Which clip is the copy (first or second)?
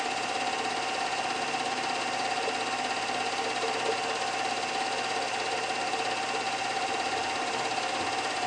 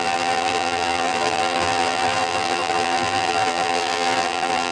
second